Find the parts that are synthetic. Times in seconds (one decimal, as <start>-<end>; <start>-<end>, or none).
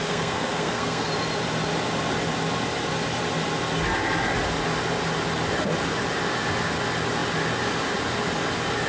0.0-1.1